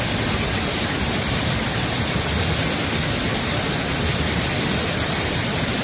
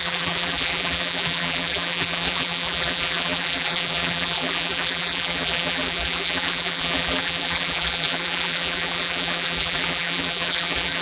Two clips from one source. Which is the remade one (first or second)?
second